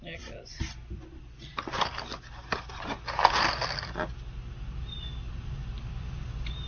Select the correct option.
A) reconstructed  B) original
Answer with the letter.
B